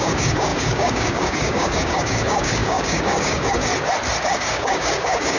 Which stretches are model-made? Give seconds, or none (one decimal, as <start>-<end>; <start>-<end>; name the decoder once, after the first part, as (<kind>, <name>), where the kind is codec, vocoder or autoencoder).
0.0-3.7 (codec, DAC); 4.2-5.4